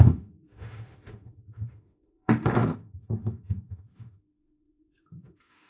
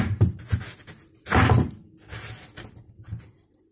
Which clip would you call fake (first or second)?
first